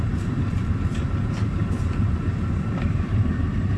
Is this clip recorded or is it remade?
remade